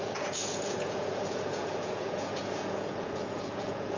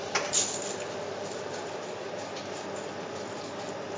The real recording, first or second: second